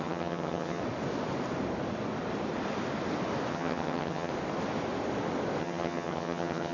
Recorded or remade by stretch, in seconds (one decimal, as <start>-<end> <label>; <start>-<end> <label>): 0.0-0.8 remade; 0.8-3.5 recorded; 3.5-4.3 remade; 4.3-5.6 recorded; 5.6-6.7 remade